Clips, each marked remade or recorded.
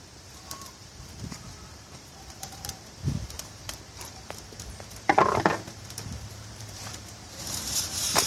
remade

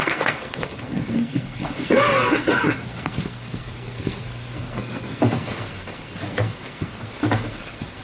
remade